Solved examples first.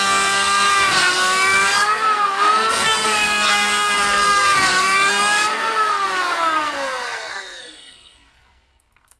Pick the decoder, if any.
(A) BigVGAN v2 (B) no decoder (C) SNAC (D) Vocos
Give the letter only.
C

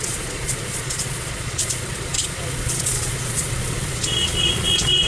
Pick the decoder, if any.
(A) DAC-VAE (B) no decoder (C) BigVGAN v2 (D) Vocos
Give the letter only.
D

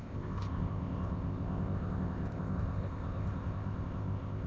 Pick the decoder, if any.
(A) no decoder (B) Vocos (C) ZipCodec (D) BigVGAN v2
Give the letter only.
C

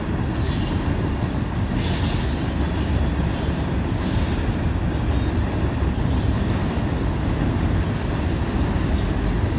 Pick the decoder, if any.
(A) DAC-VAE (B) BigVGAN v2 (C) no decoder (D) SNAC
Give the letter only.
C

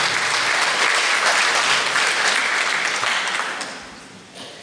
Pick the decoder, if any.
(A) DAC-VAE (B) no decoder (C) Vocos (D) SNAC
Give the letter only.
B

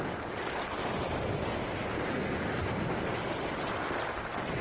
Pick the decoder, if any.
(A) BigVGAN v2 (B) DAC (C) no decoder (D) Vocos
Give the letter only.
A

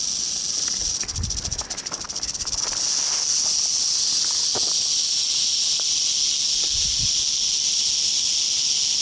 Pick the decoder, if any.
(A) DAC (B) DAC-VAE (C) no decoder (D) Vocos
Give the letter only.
C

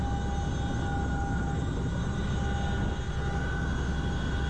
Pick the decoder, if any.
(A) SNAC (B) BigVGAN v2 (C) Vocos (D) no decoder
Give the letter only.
D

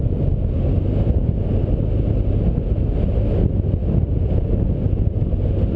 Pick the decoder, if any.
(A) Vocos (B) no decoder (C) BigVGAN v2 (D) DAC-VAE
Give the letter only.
B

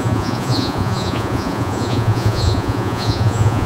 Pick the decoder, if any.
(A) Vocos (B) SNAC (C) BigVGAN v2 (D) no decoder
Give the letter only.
A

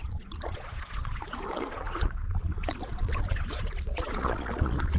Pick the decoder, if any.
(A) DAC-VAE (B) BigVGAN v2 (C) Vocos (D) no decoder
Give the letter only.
C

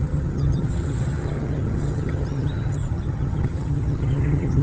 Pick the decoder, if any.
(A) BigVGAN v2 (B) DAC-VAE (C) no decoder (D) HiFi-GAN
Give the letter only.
D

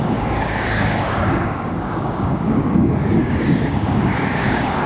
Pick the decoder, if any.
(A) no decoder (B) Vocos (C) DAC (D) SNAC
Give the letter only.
C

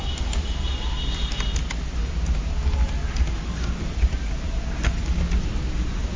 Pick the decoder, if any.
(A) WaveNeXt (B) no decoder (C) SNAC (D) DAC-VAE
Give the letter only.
B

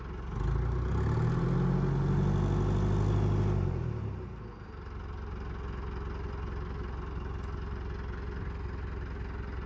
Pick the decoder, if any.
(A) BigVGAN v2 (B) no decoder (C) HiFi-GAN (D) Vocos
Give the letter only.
B